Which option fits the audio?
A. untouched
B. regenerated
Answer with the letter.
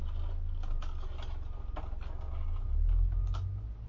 A